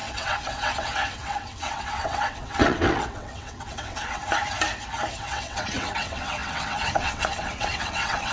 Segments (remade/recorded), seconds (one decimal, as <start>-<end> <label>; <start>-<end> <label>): 0.0-4.2 remade; 4.2-5.2 recorded; 5.2-8.3 remade